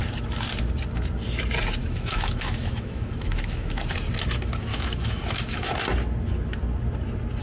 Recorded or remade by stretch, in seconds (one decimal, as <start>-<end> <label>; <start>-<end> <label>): 0.0-1.8 recorded; 1.8-3.8 remade; 3.8-4.7 recorded; 4.7-5.7 remade; 5.7-7.4 recorded

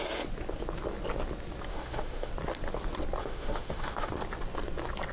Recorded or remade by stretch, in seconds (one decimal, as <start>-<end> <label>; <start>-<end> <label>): 0.0-1.7 recorded; 1.7-2.3 remade; 2.3-3.2 recorded; 3.2-4.1 remade; 4.1-5.1 recorded